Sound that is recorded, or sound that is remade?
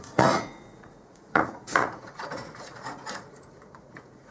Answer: remade